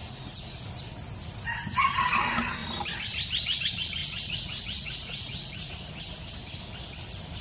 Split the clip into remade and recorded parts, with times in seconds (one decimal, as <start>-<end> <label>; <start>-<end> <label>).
0.0-0.6 remade; 0.6-4.0 recorded; 4.0-5.7 remade; 5.7-7.4 recorded